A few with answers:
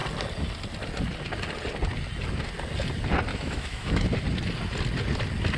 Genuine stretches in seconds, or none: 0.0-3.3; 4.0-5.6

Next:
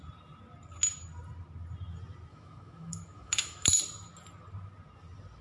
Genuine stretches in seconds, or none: 0.0-2.3; 3.8-5.4

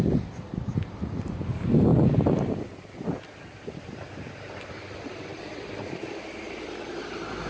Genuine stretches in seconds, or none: 0.0-7.5

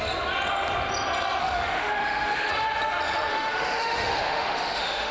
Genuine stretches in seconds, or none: 0.0-1.4; 2.5-3.3